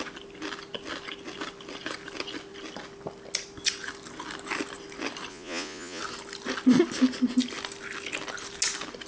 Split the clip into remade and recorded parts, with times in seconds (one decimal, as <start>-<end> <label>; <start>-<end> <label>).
0.0-5.3 recorded; 5.3-6.0 remade; 6.0-9.1 recorded